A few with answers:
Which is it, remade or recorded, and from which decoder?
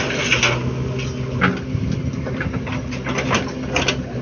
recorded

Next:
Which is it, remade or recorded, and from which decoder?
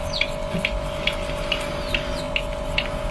recorded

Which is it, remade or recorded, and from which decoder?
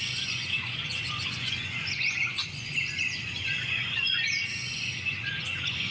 remade, vocoder, Vocos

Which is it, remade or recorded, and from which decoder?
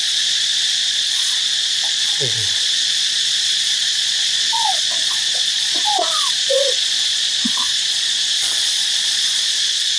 remade, vocoder, Vocos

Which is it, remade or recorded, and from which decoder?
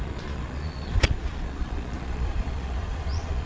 remade, vocoder, Vocos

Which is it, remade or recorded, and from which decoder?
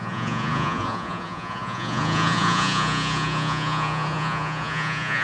remade, vocoder, Vocos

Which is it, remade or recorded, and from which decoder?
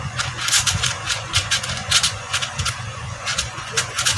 remade, vocoder, Vocos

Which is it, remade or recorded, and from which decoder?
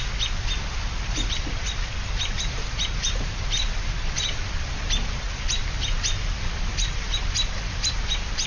recorded